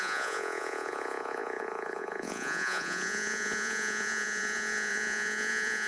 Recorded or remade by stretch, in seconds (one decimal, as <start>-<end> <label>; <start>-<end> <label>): 0.0-5.9 remade